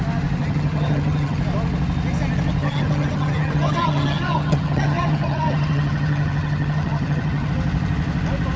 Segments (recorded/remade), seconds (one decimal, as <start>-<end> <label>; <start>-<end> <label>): 0.0-0.4 recorded; 0.4-1.4 remade; 1.4-2.6 recorded; 2.6-7.5 remade; 7.5-8.6 recorded